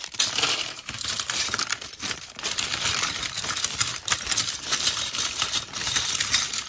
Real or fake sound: fake